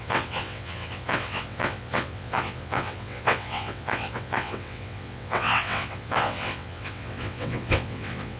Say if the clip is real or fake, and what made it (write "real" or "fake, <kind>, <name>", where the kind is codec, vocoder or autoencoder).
fake, vocoder, WaveNeXt